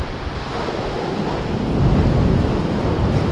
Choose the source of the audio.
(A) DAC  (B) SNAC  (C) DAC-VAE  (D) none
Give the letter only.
D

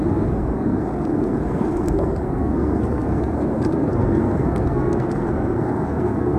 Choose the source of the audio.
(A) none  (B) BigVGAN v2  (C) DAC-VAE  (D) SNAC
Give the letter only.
D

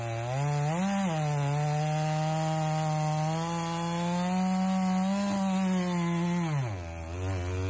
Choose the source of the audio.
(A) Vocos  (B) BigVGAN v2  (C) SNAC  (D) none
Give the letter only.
D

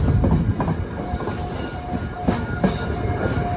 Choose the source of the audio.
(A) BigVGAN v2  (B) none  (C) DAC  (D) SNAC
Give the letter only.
B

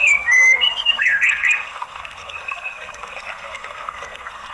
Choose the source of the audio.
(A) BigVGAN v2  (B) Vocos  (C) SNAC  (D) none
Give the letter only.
C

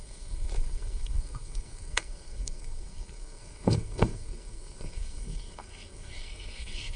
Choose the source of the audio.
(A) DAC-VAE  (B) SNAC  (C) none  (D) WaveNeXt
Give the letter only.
B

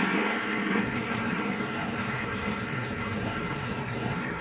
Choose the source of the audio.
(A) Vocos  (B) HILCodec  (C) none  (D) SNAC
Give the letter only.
D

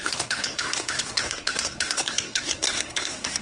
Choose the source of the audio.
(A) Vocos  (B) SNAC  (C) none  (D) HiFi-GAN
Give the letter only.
B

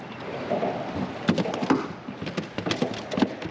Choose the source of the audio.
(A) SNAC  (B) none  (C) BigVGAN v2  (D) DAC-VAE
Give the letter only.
B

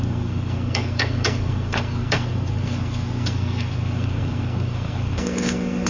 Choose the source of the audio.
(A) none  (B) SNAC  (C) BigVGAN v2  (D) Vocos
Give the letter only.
B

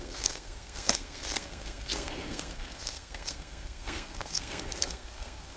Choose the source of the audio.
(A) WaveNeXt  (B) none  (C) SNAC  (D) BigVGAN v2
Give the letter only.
C